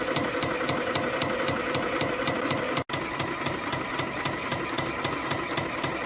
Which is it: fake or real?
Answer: real